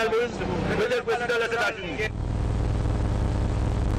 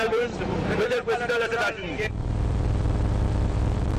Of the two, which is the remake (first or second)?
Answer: second